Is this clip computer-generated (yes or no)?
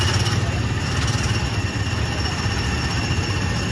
no